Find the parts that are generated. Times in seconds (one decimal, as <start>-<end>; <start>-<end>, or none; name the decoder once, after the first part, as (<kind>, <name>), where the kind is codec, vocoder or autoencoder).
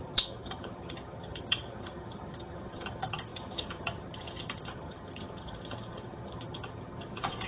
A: 0.0-7.5 (vocoder, HiFi-GAN)